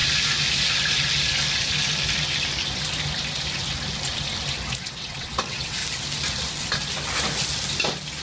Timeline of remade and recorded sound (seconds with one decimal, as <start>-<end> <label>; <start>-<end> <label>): 0.0-4.9 recorded; 4.9-5.8 remade; 5.8-8.2 recorded